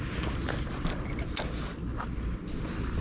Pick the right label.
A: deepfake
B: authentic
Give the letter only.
B